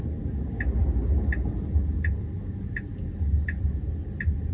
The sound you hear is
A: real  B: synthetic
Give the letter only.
A